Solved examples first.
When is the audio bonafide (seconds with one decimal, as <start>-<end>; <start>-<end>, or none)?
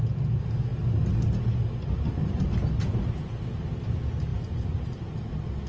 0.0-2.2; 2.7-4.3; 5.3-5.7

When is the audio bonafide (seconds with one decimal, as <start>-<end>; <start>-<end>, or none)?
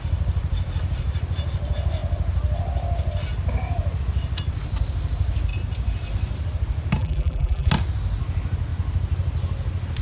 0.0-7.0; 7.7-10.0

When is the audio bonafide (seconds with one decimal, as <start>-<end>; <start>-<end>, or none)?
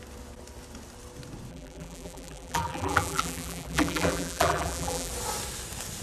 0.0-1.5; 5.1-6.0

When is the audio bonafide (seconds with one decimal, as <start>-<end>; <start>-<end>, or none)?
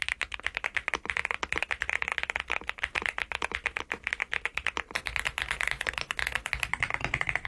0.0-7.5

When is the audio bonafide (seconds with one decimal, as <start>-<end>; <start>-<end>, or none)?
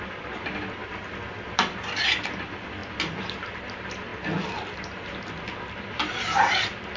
0.8-1.5; 2.8-3.5; 4.1-5.1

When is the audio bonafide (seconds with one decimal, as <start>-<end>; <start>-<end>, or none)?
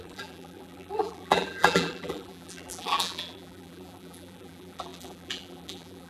none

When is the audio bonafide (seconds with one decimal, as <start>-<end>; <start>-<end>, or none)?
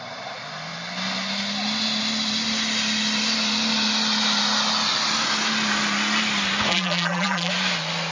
0.0-6.7; 7.5-8.1